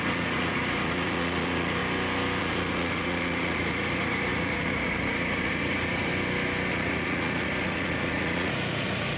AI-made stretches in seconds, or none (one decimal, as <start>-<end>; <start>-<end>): 0.0-1.8; 2.4-6.1; 6.7-9.2